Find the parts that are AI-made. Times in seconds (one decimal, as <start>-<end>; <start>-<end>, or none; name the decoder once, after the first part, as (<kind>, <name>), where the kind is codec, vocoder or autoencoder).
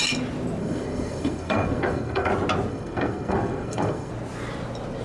0.6-2.3 (codec, SNAC); 2.7-4.1